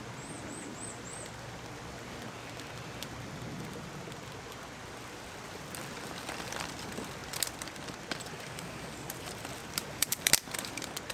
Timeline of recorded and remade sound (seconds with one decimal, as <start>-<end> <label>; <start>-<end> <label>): 0.0-9.6 recorded; 9.6-10.3 remade; 10.3-11.1 recorded